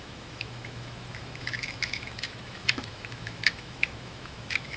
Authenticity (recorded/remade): remade